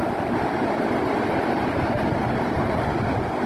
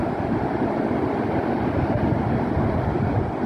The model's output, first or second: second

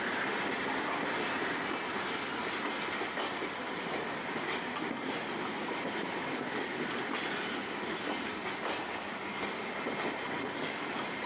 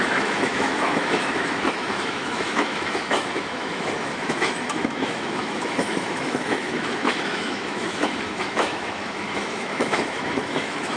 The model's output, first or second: second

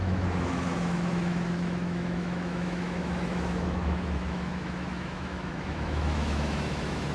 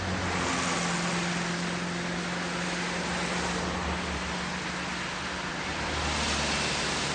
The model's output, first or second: first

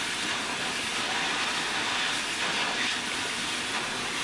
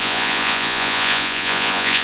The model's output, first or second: second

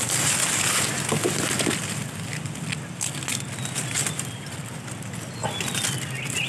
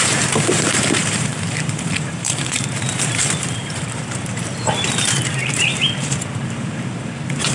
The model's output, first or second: second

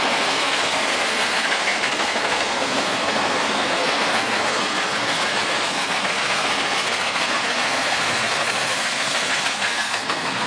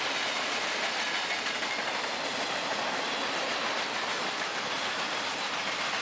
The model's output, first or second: first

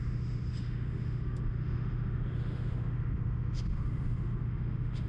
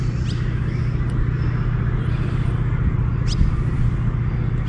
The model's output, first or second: first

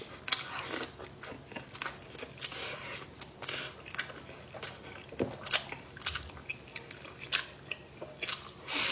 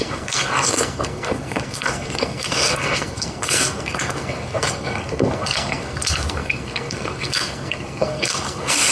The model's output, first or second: second